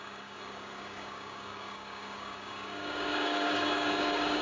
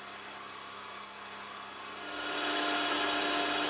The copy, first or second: first